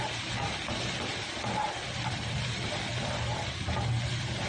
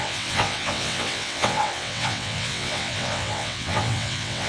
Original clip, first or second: first